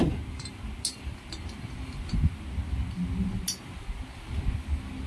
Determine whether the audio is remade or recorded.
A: recorded